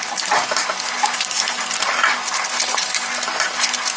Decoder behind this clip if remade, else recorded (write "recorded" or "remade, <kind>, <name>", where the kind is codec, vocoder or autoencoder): recorded